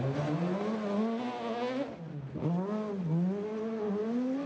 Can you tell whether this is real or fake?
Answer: real